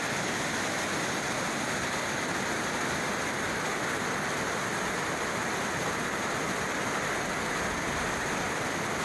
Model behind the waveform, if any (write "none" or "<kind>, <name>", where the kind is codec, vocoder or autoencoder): none